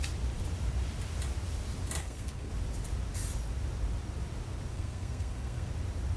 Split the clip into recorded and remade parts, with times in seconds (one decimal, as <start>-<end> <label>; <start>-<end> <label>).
0.0-2.0 recorded; 2.0-2.5 remade; 2.5-4.7 recorded; 4.7-5.7 remade; 5.7-6.2 recorded